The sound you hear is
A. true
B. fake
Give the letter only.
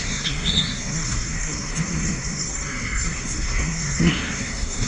B